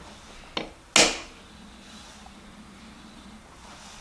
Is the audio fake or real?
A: real